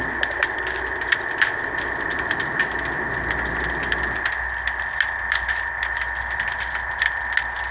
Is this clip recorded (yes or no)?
yes